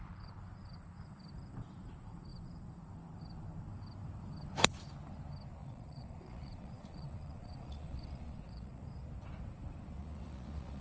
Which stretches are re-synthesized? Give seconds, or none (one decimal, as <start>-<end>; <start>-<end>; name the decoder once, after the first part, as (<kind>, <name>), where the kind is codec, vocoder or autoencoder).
5.6-8.8 (vocoder, Vocos); 10.0-10.8